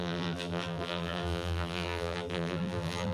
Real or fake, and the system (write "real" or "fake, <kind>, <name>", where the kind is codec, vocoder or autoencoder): fake, vocoder, BigVGAN v2